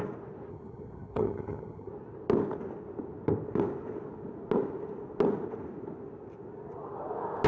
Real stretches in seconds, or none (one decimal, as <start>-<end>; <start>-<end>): 0.0-0.5; 1.9-7.5